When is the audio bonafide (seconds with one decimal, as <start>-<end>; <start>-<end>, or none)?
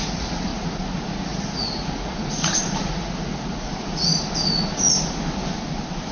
4.1-6.1